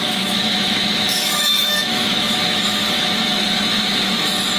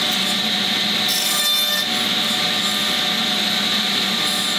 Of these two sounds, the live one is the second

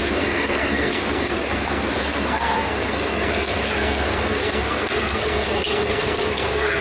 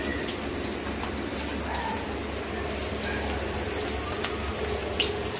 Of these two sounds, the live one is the second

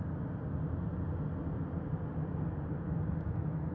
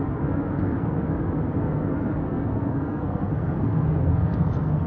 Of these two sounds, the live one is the first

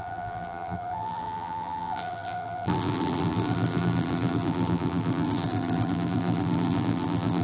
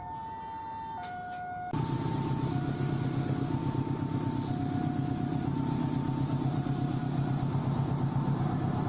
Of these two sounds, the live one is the second